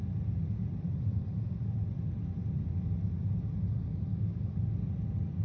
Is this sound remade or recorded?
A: recorded